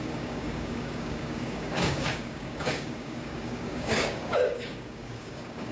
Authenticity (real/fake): fake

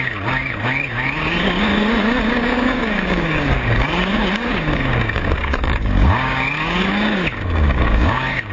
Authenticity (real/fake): fake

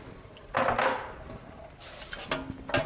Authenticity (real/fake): real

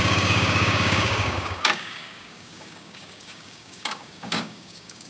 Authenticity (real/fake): fake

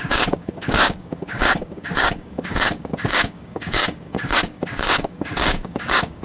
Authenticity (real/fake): fake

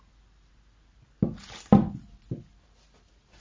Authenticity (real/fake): real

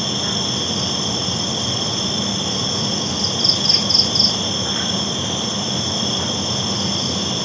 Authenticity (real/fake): real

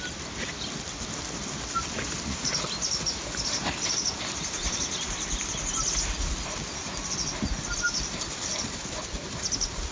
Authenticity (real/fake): real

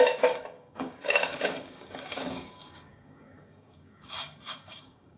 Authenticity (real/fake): fake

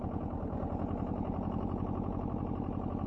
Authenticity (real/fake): real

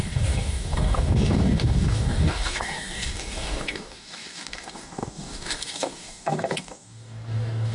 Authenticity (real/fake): fake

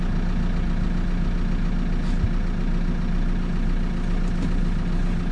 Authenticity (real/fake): real